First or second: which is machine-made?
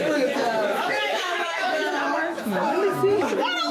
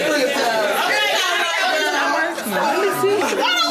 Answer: first